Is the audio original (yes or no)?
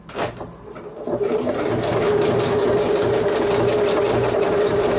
yes